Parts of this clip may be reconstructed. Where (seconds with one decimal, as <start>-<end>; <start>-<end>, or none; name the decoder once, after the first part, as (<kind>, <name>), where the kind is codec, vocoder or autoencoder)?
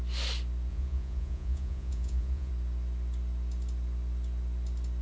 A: 0.7-2.5 (vocoder, Vocos)